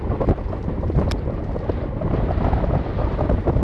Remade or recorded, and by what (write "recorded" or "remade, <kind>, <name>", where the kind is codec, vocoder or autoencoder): recorded